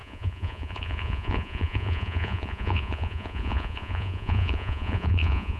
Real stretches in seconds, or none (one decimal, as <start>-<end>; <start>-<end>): none